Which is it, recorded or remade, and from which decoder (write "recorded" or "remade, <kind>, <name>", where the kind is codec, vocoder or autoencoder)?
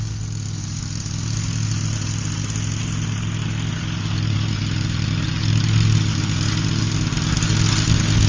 recorded